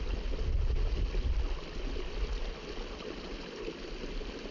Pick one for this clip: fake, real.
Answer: real